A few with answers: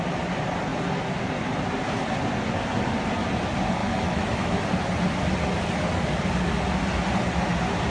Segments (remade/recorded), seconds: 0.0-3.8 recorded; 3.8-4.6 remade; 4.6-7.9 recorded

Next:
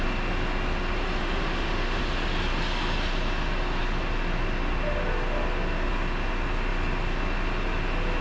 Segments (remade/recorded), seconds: 0.0-1.2 recorded; 1.2-2.0 remade; 2.0-8.2 recorded

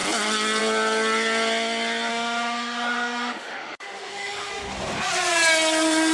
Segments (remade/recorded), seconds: 0.0-2.1 recorded; 2.1-4.5 remade; 4.5-6.1 recorded

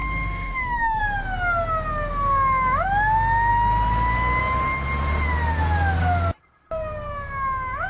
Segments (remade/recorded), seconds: 0.0-1.0 remade; 1.0-7.9 recorded